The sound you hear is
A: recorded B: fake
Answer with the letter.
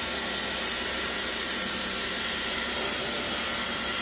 B